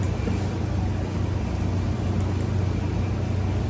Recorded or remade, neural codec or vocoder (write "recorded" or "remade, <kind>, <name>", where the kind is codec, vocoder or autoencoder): recorded